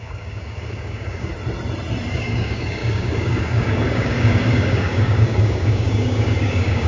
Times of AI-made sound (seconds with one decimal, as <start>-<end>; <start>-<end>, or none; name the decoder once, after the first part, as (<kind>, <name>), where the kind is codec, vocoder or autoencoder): 0.0-1.3 (codec, DAC); 2.1-6.9